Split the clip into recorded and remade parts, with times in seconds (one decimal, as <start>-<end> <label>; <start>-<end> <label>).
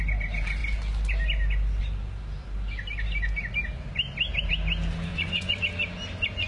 0.0-5.1 recorded; 5.1-5.6 remade; 5.6-6.5 recorded